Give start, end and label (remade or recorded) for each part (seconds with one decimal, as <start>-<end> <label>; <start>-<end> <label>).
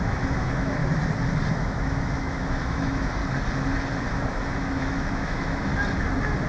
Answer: 0.0-0.8 remade; 0.8-1.5 recorded; 1.5-3.2 remade; 3.2-4.0 recorded; 4.0-5.7 remade; 5.7-6.5 recorded